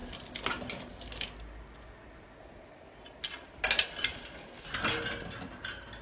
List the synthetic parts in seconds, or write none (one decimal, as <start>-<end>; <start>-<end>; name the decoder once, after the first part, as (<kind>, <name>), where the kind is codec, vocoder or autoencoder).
0.0-0.5 (vocoder, BigVGAN v2)